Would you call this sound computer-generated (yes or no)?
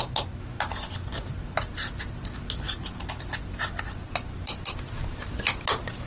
no